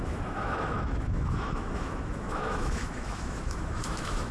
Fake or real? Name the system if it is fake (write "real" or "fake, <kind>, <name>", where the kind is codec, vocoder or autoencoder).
fake, autoencoder, DAC-VAE